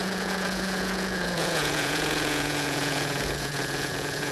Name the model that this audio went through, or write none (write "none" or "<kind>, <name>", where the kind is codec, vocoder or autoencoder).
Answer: vocoder, Vocos